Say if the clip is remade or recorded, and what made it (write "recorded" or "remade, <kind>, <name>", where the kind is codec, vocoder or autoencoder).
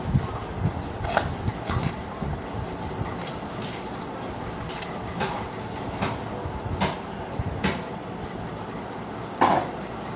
recorded